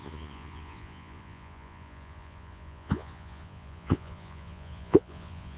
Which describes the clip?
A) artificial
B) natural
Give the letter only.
A